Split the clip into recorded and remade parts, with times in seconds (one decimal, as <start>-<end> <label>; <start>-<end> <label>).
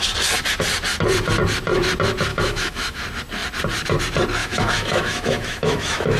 0.0-2.3 recorded; 2.3-3.0 remade; 3.0-4.4 recorded; 4.4-6.2 remade